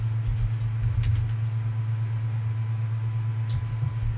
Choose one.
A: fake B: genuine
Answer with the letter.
B